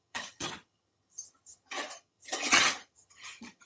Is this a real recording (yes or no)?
no